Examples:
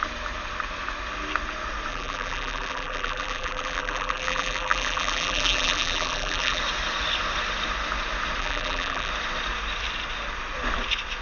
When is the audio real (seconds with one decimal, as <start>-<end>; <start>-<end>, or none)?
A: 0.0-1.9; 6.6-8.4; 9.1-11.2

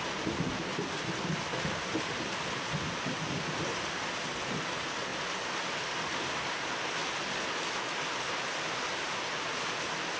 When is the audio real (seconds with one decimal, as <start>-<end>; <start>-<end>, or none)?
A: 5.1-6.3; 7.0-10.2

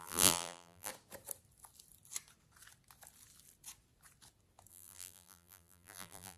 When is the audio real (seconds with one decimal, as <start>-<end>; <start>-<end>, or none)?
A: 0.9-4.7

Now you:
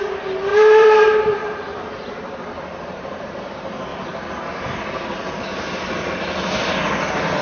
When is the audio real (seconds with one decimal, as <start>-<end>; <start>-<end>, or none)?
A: 0.0-0.5; 3.5-7.4

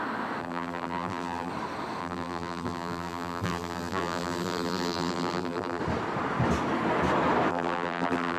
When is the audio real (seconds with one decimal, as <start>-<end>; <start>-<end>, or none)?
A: 0.0-0.4; 1.5-2.0; 5.8-7.5

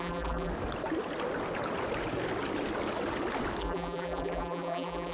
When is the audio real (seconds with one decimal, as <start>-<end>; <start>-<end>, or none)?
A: 0.5-3.6

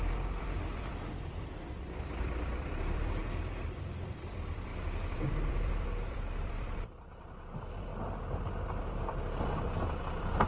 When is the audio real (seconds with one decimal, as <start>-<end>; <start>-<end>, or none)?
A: none

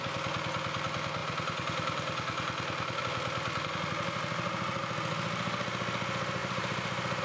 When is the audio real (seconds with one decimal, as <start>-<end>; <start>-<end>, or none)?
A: 0.0-1.2; 3.0-6.4